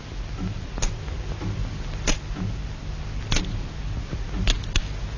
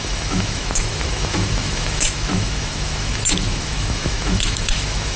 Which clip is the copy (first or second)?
second